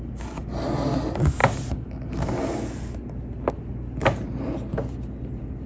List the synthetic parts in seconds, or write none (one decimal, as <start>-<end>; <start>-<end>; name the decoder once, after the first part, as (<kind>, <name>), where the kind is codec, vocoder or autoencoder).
none